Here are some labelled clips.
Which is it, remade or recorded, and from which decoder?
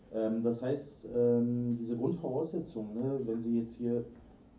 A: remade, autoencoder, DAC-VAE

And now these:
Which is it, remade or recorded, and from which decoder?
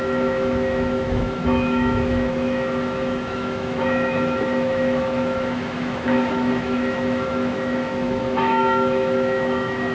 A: remade, autoencoder, DAC-VAE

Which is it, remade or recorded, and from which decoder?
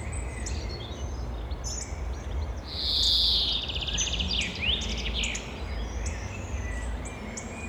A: recorded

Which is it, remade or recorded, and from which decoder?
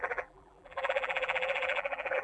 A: remade, vocoder, BigVGAN v2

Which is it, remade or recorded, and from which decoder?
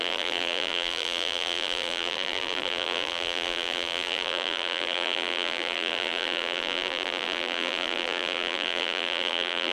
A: remade, vocoder, BigVGAN v2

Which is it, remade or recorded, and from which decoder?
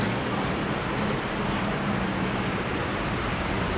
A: remade, vocoder, BigVGAN v2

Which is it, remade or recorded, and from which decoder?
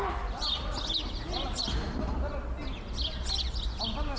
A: recorded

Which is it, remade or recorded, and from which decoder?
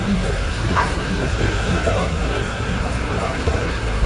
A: remade, codec, SNAC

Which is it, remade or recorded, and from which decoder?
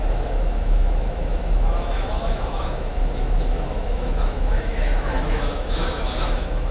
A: remade, autoencoder, DAC-VAE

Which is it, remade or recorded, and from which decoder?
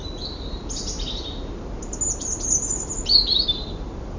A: recorded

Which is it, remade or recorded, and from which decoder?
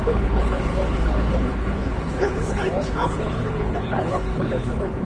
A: remade, codec, HILCodec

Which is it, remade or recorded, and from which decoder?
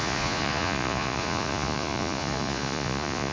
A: remade, vocoder, Vocos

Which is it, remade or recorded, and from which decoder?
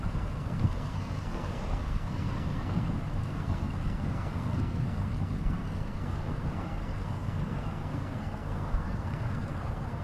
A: remade, codec, SNAC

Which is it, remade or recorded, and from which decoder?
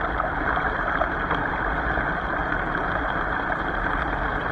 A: recorded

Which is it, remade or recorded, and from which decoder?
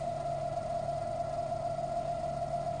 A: recorded